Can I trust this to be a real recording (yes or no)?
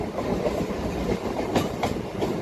yes